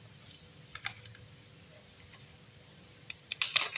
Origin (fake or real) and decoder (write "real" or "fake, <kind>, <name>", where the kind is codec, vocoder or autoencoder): real